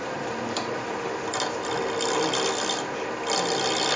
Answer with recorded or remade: recorded